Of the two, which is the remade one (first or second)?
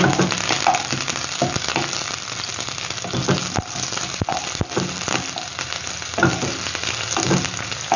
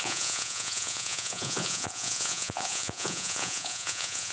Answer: second